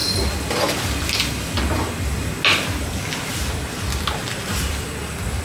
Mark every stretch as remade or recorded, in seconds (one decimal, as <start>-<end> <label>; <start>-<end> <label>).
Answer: 0.0-5.4 recorded